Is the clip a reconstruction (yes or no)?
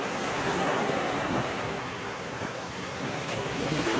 yes